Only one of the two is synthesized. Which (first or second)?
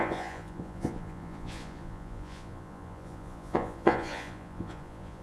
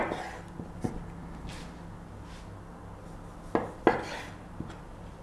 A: first